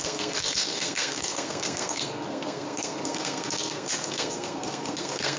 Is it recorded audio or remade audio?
remade